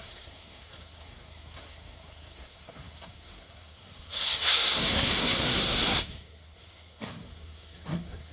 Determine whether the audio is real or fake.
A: fake